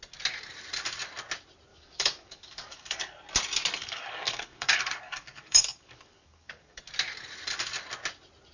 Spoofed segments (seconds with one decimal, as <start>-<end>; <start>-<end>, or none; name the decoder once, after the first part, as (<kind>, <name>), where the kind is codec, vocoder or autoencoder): 1.7-3.0 (codec, DAC); 3.8-6.8